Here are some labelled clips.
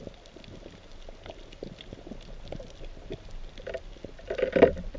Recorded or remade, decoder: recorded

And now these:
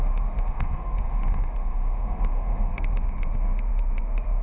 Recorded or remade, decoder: remade, autoencoder, DAC-VAE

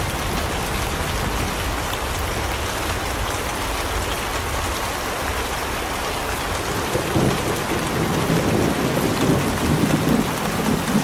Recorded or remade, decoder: recorded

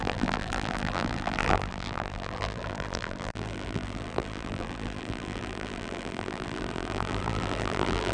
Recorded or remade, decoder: remade, vocoder, BigVGAN v2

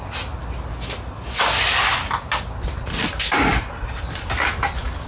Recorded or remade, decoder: recorded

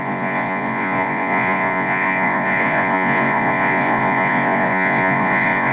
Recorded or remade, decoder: remade, vocoder, Vocos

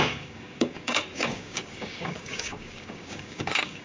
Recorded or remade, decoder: remade, codec, DAC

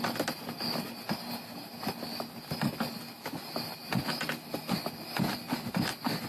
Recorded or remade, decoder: recorded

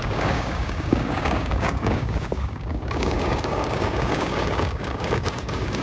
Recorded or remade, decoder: remade, codec, DAC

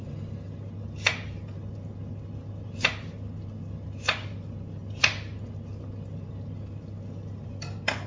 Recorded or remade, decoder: recorded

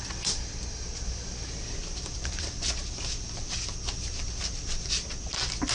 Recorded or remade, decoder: recorded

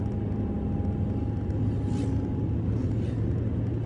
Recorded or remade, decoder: recorded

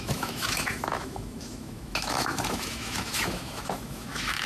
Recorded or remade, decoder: remade, autoencoder, DAC-VAE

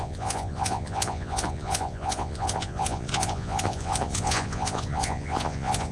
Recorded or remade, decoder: remade, vocoder, Vocos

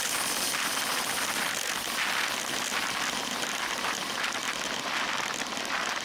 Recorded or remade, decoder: recorded